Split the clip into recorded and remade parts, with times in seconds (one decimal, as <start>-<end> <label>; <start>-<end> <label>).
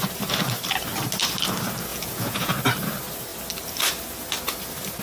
0.0-1.9 recorded; 1.9-2.5 remade; 2.5-5.0 recorded